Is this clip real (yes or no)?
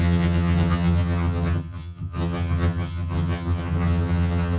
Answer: no